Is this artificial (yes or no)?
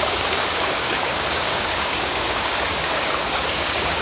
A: yes